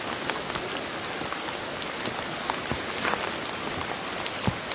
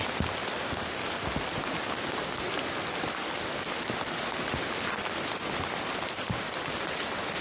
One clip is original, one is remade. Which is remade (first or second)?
second